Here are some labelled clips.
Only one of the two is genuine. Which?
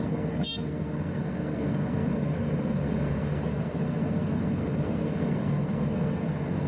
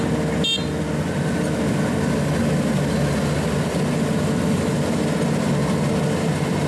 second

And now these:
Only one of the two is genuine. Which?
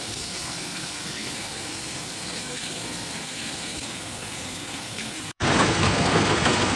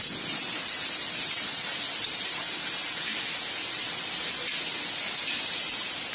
second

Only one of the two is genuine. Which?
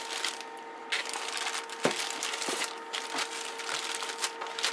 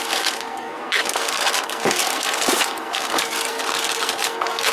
first